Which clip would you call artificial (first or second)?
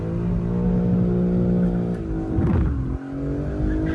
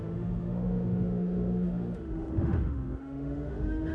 second